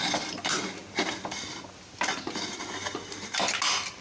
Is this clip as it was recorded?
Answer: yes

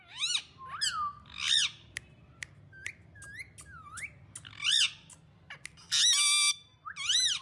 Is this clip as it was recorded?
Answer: yes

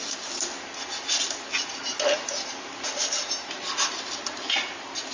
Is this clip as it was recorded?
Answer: yes